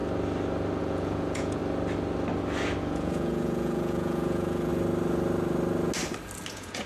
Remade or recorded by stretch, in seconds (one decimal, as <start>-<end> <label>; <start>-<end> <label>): 0.0-0.8 recorded; 0.8-1.6 remade; 1.6-2.8 recorded; 2.8-4.7 remade; 4.7-6.5 recorded; 6.5-6.9 remade